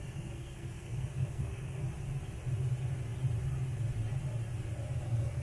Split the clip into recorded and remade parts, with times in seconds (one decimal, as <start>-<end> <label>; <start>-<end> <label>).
0.0-1.8 remade; 1.8-5.0 recorded; 5.0-5.4 remade